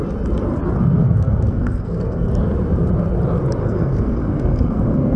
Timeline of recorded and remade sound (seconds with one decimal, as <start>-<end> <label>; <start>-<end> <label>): 0.0-1.0 recorded; 1.0-2.3 remade; 2.3-3.6 recorded; 3.6-5.2 remade